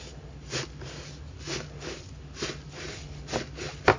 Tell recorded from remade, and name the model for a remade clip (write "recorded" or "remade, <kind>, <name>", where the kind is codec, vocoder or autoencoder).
recorded